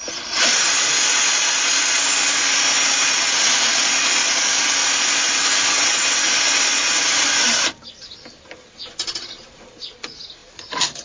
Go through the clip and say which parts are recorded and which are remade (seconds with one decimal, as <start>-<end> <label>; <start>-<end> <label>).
0.0-11.0 recorded

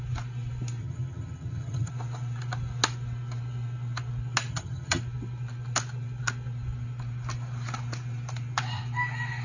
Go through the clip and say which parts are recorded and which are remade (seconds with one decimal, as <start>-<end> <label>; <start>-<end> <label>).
0.0-0.8 recorded; 0.8-1.9 remade; 1.9-4.5 recorded; 4.5-5.0 remade; 5.0-9.4 recorded

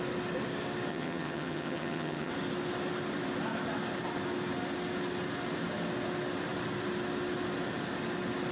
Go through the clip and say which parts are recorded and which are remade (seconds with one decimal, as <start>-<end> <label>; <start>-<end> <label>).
0.0-0.9 recorded; 0.9-2.3 remade; 2.3-8.5 recorded

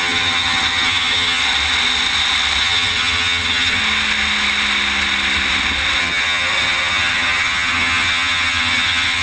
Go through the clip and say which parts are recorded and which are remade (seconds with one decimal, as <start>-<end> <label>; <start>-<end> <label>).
0.0-1.4 remade; 1.4-2.6 recorded; 2.6-3.8 remade; 3.8-6.0 recorded; 6.0-9.2 remade